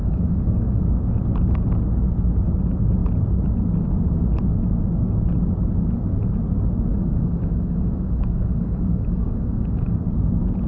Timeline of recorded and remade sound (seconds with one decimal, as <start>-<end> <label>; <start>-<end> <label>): 0.0-0.8 remade; 0.8-6.9 recorded; 6.9-10.0 remade; 10.0-10.7 recorded